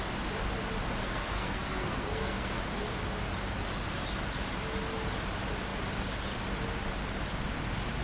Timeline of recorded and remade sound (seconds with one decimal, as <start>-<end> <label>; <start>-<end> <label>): 0.0-1.0 recorded; 1.0-2.6 remade; 2.6-8.0 recorded